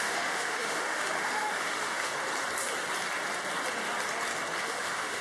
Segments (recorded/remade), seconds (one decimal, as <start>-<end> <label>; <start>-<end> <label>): 0.0-2.1 remade; 2.1-4.6 recorded; 4.6-5.2 remade